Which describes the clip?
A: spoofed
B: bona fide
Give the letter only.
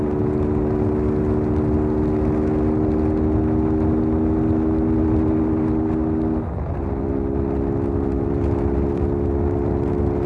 B